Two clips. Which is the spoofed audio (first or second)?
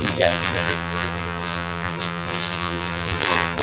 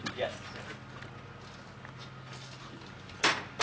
first